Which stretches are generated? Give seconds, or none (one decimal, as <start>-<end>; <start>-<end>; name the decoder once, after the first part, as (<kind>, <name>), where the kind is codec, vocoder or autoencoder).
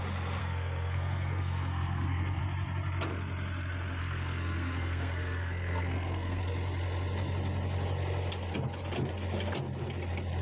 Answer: 0.4-2.4 (codec, SNAC); 4.0-6.4